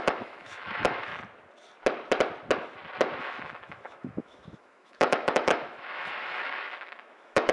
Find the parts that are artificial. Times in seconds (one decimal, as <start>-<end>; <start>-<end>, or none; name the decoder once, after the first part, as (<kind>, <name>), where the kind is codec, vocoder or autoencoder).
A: 0.0-1.1 (autoencoder, DAC-VAE); 3.2-7.5